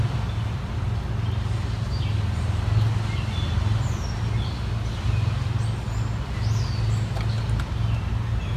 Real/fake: real